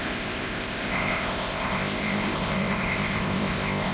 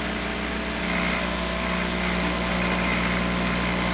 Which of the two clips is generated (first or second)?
first